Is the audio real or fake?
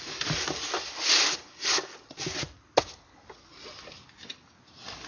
real